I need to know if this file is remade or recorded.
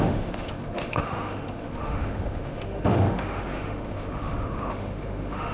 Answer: remade